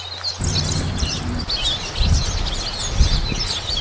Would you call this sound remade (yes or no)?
no